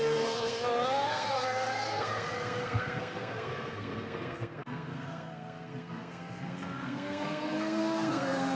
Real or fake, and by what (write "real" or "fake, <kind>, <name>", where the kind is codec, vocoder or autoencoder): fake, codec, SNAC